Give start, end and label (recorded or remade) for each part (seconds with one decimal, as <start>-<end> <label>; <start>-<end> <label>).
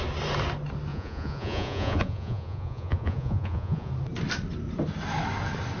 0.0-0.9 recorded; 0.9-3.9 remade; 3.9-5.8 recorded